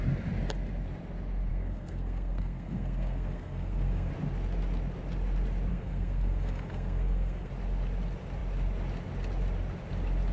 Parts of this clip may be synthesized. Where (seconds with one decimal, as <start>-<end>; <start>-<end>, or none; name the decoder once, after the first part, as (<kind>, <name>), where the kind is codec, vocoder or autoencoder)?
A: 1.5-4.1 (codec, SNAC); 5.7-7.5